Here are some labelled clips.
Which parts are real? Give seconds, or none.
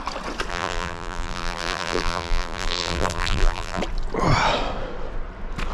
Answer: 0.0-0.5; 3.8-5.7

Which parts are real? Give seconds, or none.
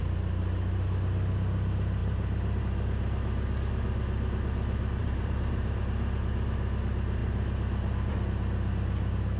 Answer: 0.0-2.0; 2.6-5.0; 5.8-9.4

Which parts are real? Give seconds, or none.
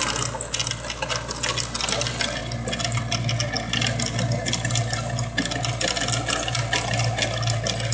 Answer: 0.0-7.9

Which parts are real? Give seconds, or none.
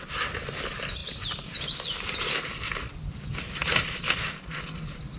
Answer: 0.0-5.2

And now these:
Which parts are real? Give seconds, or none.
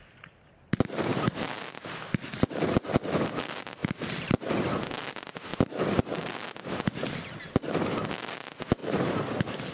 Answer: 0.0-1.1; 1.7-9.7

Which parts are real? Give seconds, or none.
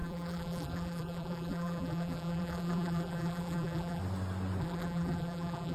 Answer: 4.0-4.6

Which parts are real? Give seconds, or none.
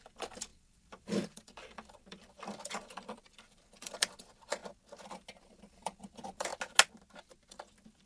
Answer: 4.6-5.4; 6.5-7.5